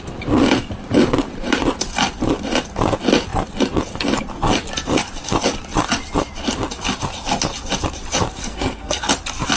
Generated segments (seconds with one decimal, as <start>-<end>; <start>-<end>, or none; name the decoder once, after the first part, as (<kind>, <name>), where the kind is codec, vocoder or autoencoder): 8.4-9.0 (codec, SNAC)